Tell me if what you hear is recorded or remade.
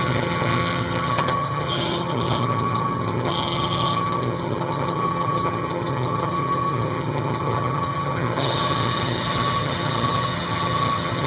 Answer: remade